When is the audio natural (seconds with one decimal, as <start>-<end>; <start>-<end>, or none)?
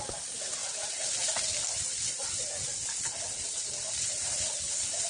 0.0-5.1